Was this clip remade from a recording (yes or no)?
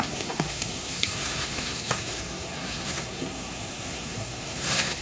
yes